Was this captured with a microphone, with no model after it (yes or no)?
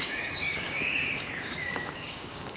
no